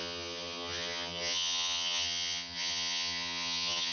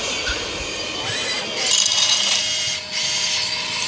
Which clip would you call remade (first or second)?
first